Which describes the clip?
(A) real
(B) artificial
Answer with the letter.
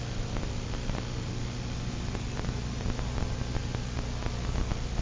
A